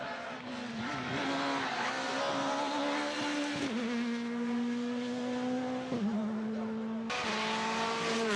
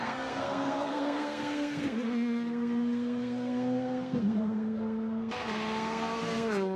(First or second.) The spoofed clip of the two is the second